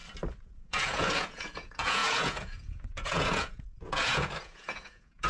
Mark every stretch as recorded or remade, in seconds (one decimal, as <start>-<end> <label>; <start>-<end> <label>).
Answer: 0.0-0.5 recorded; 0.5-5.3 remade